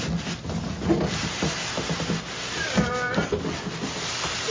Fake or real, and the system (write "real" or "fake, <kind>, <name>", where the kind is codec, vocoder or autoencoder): real